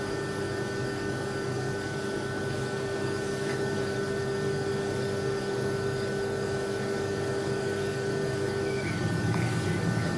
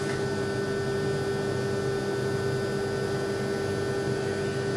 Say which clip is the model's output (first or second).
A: first